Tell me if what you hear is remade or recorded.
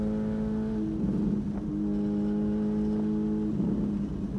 recorded